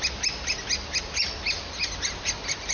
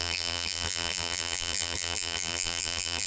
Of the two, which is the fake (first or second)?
second